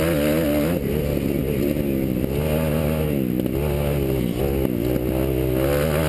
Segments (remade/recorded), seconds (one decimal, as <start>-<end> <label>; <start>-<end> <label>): 0.0-6.1 recorded